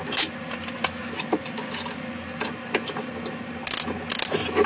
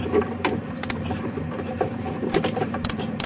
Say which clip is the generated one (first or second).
second